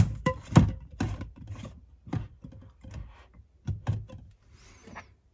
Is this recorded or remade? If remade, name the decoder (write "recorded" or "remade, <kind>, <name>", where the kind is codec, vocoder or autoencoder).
recorded